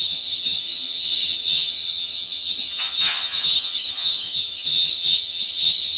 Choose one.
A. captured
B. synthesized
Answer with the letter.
B